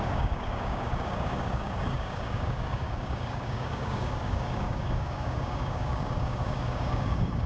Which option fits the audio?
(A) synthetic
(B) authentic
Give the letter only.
A